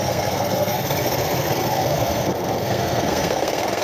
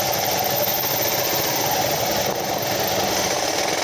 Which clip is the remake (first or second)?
first